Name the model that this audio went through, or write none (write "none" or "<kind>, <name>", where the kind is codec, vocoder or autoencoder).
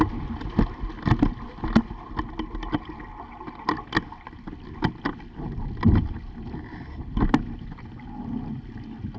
none